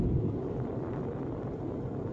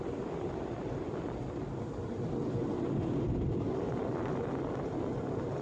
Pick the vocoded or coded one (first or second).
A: second